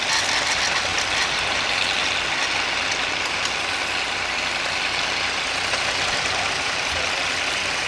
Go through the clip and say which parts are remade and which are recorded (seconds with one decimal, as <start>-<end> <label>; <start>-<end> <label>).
0.0-7.9 recorded